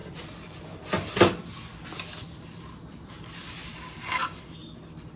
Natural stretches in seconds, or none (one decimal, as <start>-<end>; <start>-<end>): 0.0-5.2

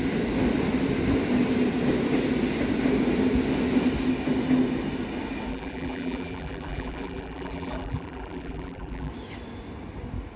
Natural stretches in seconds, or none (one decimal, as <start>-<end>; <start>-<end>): 0.0-5.5; 9.1-10.4

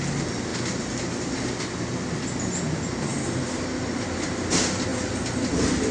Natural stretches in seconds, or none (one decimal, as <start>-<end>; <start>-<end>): 0.0-5.9

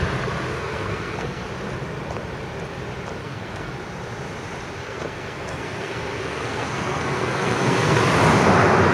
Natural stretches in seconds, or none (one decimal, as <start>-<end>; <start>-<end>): 0.0-0.5; 1.5-3.2; 3.7-4.8; 8.0-8.9

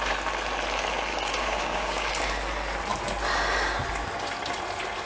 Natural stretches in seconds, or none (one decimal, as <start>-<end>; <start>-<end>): 0.0-1.1; 2.1-5.1

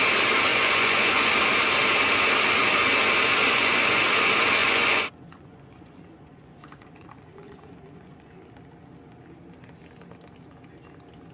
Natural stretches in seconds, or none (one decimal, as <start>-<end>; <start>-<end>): 0.0-0.5; 1.3-3.4; 4.0-4.6; 8.3-11.3

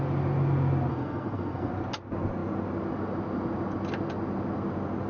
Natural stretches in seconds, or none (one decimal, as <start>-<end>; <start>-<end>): 0.0-0.9; 1.7-5.1

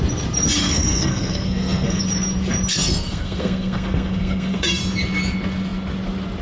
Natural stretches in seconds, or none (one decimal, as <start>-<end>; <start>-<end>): 0.0-0.6; 2.0-2.7; 4.8-6.4